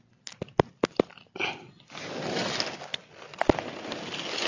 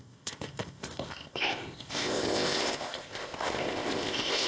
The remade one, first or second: second